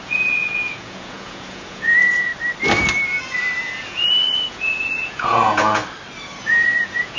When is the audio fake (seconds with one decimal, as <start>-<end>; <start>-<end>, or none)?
0.0-2.3; 3.6-5.8; 6.4-7.2